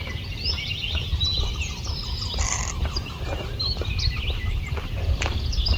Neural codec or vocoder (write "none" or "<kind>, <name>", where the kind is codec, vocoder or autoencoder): none